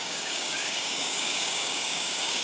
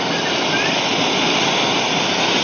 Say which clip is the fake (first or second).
first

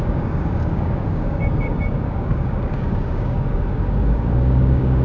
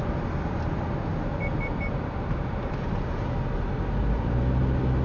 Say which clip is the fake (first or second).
first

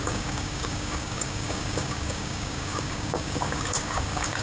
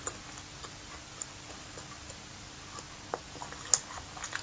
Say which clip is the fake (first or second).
first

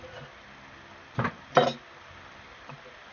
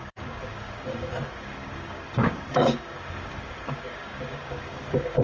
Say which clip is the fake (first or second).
second